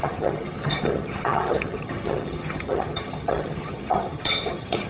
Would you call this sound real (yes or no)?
no